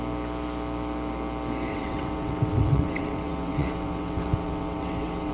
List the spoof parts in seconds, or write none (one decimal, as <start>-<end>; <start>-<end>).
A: 1.7-5.3